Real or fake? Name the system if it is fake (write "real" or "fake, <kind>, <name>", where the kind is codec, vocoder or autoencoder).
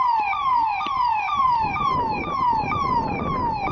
fake, vocoder, Vocos